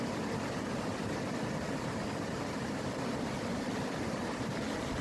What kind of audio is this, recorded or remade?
recorded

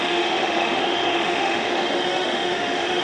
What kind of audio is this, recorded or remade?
remade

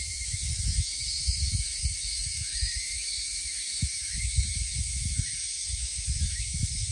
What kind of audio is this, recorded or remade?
remade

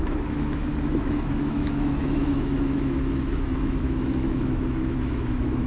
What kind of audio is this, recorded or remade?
remade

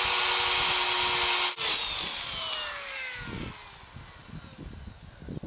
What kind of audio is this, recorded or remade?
recorded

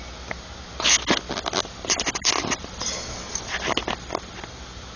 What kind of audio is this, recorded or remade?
recorded